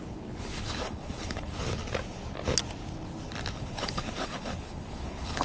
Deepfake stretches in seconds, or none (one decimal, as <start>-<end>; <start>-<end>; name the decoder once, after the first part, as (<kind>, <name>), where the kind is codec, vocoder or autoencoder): 0.0-1.8 (codec, HILCodec); 3.6-5.4